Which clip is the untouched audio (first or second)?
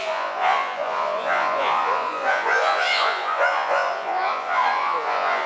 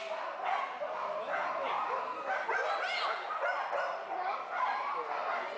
second